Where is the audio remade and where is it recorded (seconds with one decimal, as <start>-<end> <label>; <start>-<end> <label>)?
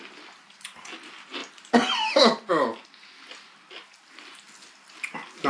0.0-5.5 recorded